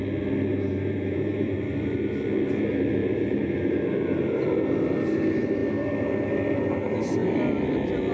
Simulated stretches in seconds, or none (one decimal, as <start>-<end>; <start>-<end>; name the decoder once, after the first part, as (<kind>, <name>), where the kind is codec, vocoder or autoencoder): 0.5-1.6 (vocoder, BigVGAN v2); 3.0-4.2